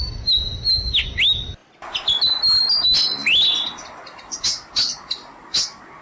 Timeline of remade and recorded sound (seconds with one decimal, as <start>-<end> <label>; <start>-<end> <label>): 0.0-6.0 recorded